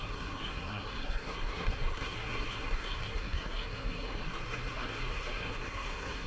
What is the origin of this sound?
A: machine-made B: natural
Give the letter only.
A